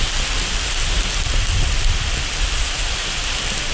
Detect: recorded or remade recorded